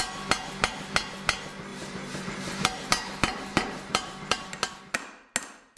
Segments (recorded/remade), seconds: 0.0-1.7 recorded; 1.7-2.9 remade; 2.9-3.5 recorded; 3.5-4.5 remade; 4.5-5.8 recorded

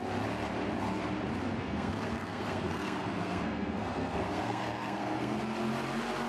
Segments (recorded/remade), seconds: 0.0-1.6 recorded; 1.6-5.4 remade; 5.4-6.3 recorded

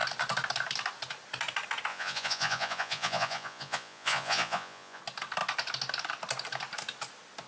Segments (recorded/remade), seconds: 0.0-1.9 recorded; 1.9-5.0 remade; 5.0-7.5 recorded